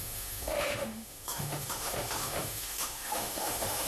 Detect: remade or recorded remade